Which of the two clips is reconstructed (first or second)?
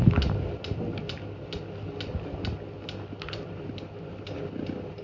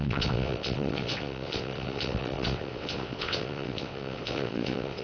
second